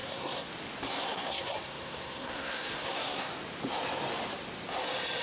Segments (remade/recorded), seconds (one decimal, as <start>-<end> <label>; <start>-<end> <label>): 0.0-0.5 remade; 0.5-1.0 recorded; 1.0-3.3 remade; 3.3-5.2 recorded